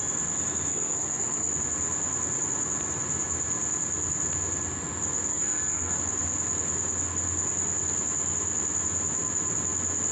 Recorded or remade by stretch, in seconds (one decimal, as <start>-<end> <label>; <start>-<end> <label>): 0.0-0.7 recorded; 0.7-1.6 remade; 1.6-5.3 recorded; 5.3-6.0 remade; 6.0-10.1 recorded